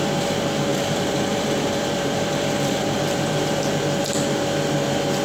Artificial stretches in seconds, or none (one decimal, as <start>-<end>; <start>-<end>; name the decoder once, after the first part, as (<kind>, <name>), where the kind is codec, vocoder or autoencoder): 0.7-3.8 (vocoder, BigVGAN v2)

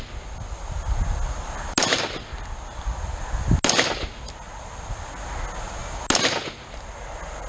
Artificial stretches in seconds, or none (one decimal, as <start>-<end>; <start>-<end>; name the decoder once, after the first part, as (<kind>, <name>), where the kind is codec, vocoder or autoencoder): none